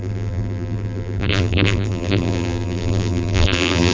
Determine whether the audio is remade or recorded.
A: remade